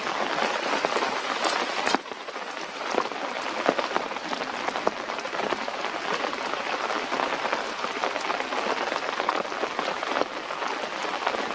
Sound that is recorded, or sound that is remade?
recorded